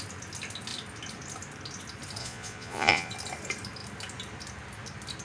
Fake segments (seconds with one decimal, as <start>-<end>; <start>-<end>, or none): 2.2-3.1